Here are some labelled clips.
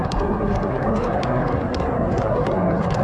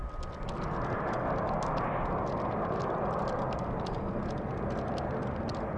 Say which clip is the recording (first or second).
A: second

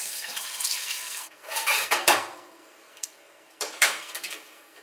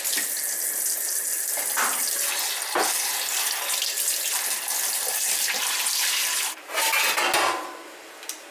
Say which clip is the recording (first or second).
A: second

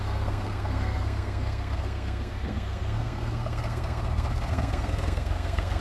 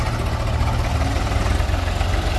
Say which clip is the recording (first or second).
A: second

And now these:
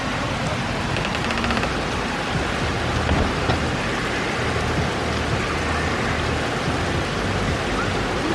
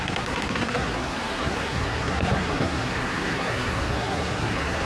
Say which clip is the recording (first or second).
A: first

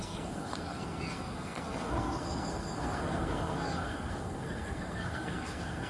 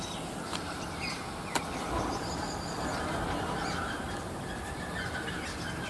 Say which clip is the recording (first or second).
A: second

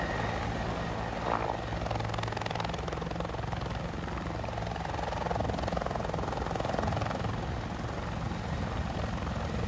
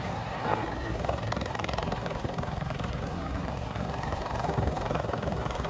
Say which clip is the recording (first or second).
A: first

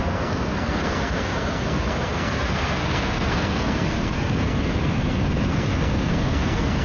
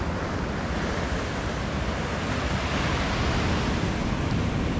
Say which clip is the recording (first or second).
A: second